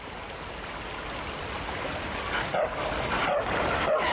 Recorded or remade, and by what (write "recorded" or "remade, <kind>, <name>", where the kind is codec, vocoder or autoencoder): recorded